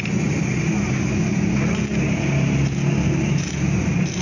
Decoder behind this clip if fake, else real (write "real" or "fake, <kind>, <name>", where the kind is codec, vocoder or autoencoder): real